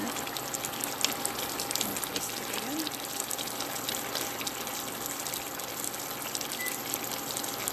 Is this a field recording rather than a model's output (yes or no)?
yes